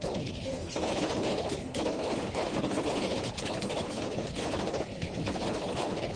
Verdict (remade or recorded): remade